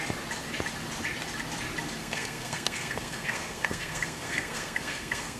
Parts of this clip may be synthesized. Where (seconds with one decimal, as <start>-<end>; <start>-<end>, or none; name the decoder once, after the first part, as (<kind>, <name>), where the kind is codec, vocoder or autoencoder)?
2.0-5.4 (codec, SNAC)